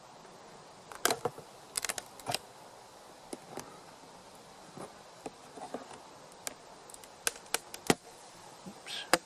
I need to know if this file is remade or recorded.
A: recorded